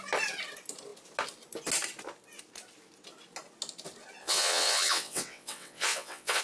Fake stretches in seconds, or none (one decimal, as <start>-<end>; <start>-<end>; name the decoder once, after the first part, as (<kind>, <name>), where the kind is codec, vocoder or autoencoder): 4.2-6.4 (vocoder, WaveNeXt)